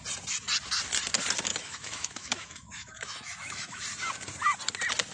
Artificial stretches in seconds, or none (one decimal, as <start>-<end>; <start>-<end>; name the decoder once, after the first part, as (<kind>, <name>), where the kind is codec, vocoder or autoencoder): 1.5-3.8 (autoencoder, DAC-VAE)